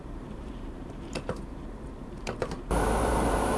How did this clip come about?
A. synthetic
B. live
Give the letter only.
A